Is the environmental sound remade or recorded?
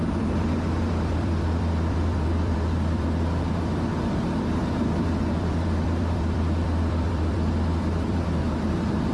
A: remade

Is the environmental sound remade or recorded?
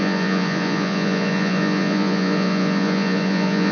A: remade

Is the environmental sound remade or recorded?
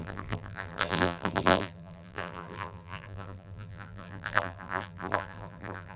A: remade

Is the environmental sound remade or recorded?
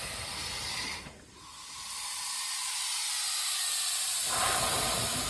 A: recorded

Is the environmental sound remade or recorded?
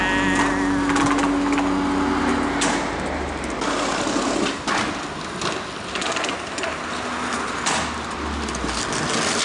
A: recorded